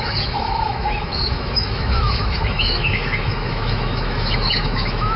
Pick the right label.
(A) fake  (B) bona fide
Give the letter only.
A